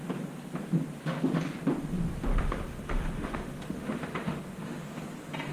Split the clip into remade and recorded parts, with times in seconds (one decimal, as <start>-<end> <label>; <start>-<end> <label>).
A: 0.0-2.3 recorded; 2.3-5.0 remade; 5.0-5.5 recorded